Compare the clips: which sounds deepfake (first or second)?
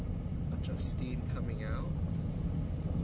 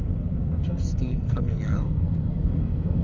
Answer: second